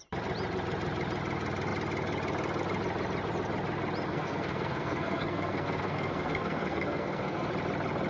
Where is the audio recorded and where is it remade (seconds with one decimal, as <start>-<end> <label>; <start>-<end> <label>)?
0.0-4.1 recorded; 4.1-7.5 remade; 7.5-8.1 recorded